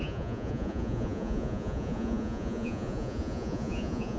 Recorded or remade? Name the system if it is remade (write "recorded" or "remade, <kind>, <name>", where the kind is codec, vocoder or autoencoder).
remade, vocoder, Vocos